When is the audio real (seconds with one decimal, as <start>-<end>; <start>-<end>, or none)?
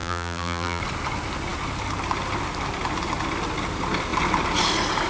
0.8-5.1